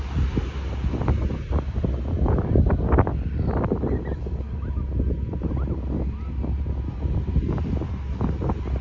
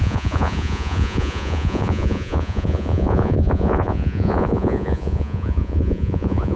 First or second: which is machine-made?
second